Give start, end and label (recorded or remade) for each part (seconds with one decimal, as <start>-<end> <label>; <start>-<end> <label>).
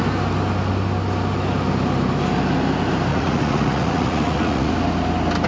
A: 0.0-3.1 recorded; 3.1-4.7 remade; 4.7-5.5 recorded